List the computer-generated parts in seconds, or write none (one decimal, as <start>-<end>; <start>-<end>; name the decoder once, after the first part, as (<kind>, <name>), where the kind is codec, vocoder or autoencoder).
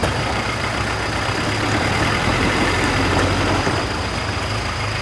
0.0-0.9 (vocoder, BigVGAN v2); 2.3-3.1